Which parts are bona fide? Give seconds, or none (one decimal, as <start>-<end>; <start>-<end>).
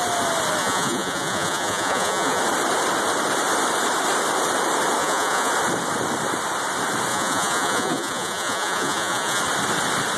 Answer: 0.0-0.6; 2.4-5.0; 5.5-7.1; 9.4-10.2